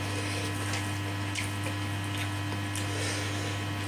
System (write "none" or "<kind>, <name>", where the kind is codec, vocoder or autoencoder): none